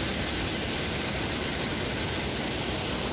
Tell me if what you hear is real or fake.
real